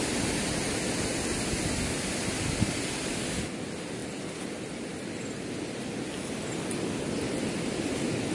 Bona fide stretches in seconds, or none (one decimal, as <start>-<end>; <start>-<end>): 0.0-8.3